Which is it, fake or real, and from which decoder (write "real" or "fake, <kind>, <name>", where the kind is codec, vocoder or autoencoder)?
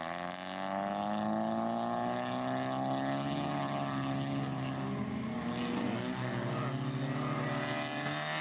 real